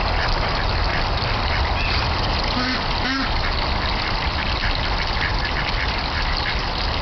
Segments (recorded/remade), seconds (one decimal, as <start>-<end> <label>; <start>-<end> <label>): 0.0-0.9 recorded; 0.9-1.6 remade; 1.6-7.0 recorded